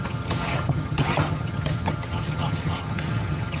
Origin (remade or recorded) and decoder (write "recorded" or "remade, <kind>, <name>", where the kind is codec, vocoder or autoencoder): remade, vocoder, HiFi-GAN